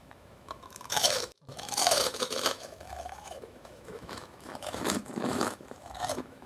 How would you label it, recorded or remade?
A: remade